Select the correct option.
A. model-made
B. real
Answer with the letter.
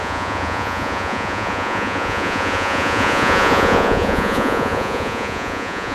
A